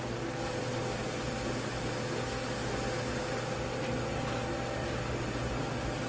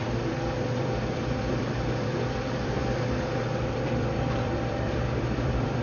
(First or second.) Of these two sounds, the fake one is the second